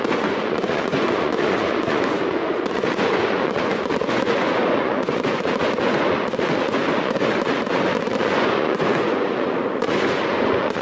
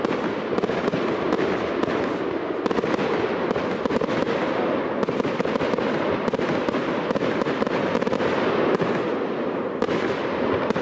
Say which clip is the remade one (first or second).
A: first